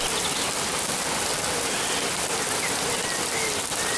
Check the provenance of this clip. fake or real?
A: real